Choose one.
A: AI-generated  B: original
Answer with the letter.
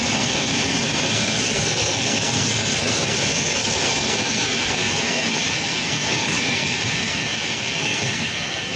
A